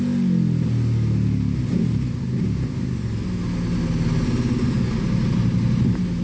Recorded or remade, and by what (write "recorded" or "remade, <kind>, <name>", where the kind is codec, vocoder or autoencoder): recorded